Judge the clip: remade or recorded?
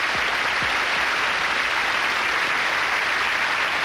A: recorded